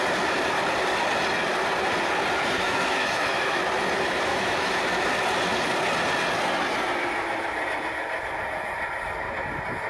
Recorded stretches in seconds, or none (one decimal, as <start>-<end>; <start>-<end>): 0.0-2.6; 3.6-4.3; 4.8-9.9

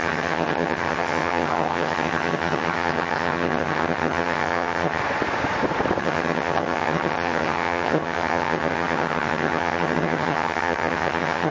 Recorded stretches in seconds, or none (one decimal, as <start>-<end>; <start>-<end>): 5.0-6.0

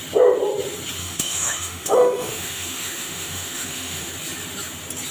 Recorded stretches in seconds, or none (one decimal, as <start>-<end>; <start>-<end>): 0.0-1.0; 4.1-5.1

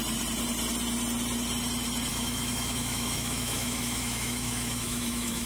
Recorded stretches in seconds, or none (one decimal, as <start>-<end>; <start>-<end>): 0.0-2.1

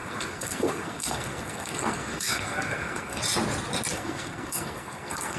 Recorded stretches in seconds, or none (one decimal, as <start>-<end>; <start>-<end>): 3.2-3.9

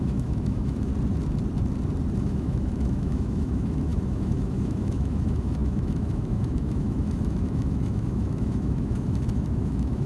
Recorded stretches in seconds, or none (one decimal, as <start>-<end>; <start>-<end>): 0.9-2.2